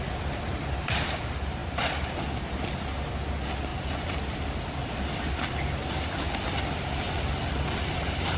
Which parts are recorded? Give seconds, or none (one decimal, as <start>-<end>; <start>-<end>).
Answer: 0.0-8.4